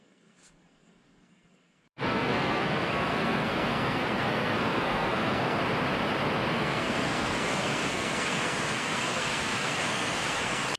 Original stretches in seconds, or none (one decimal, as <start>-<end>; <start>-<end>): 5.6-6.5